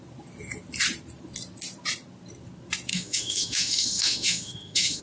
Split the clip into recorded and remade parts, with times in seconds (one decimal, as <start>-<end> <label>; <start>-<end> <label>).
0.0-2.9 recorded; 2.9-5.0 remade